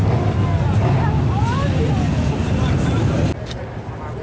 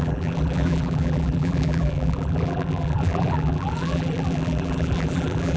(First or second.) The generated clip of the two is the second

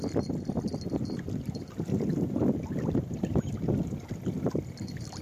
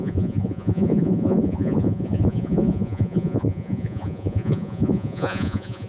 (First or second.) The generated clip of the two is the second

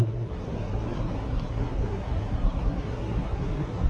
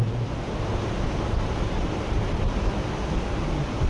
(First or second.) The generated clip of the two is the first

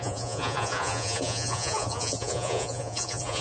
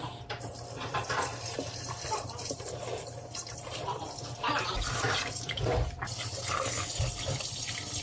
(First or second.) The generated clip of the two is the first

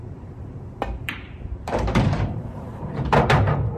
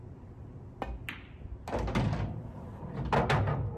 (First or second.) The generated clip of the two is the first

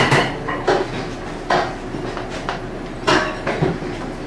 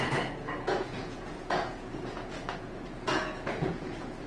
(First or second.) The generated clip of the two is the second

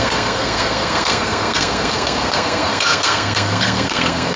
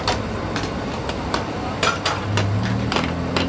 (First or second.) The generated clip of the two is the first